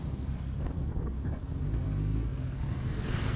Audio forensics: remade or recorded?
remade